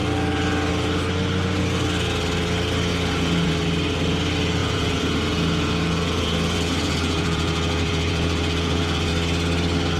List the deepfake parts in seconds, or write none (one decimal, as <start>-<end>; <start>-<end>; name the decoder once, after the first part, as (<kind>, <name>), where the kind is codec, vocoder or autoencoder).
2.9-3.5 (vocoder, Vocos); 4.6-9.1

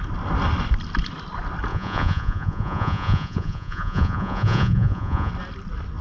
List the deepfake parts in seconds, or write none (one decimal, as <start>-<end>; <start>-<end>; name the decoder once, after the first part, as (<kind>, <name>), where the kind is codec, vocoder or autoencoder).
1.7-5.3 (vocoder, Vocos)

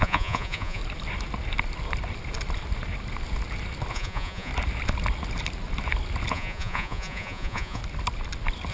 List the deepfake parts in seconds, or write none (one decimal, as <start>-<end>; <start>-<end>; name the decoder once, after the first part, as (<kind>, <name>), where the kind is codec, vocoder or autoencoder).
0.0-0.8 (vocoder, Vocos); 3.9-4.5; 6.3-7.8

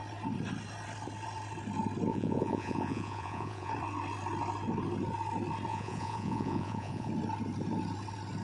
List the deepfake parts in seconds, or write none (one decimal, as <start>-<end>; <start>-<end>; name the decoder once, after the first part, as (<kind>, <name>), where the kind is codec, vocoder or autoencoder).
2.1-3.7 (vocoder, Vocos); 5.7-7.1